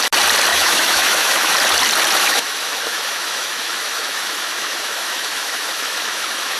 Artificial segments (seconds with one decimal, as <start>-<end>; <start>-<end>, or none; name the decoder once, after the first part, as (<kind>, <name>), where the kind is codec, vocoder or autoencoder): 0.5-1.5 (autoencoder, DAC-VAE); 2.2-6.6